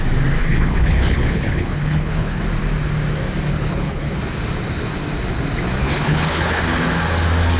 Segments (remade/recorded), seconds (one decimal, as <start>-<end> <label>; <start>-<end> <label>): 0.0-0.4 recorded; 0.4-2.4 remade; 2.4-3.5 recorded; 3.5-4.2 remade; 4.2-5.8 recorded; 5.8-6.6 remade; 6.6-7.6 recorded

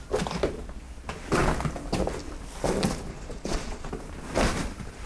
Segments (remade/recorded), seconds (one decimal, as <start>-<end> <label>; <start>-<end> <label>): 0.0-3.1 recorded; 3.1-3.9 remade; 3.9-5.1 recorded

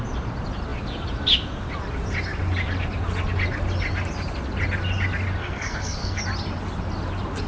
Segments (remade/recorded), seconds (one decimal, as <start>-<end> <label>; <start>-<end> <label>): 0.0-5.4 recorded; 5.4-6.2 remade; 6.2-7.5 recorded

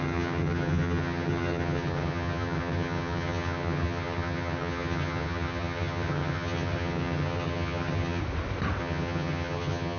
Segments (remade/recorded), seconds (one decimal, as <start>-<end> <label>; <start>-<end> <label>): 0.0-8.2 remade; 8.2-8.8 recorded; 8.8-10.0 remade

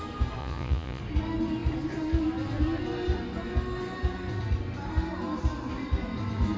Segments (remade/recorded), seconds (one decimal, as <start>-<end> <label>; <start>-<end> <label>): 0.0-0.4 recorded; 0.4-1.0 remade; 1.0-6.6 recorded

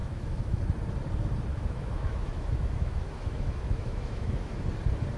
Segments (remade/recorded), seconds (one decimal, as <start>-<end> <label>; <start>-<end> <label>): 0.0-0.6 remade; 0.6-1.5 recorded; 1.5-4.6 remade; 4.6-5.2 recorded